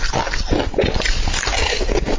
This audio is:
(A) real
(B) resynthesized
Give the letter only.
A